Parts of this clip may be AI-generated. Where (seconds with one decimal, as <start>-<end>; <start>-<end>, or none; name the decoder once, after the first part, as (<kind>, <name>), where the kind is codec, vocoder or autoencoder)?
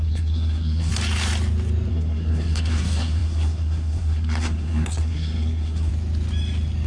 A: 0.0-0.9 (codec, SNAC); 1.9-5.9